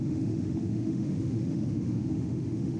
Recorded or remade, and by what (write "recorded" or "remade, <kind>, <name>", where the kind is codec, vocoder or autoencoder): remade, autoencoder, DAC-VAE